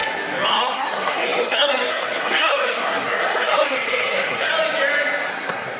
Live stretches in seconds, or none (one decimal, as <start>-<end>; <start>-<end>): 0.0-0.5; 4.5-5.3